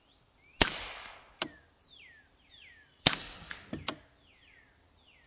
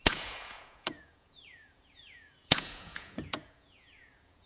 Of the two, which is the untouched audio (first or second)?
first